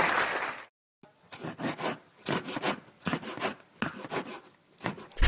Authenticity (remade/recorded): recorded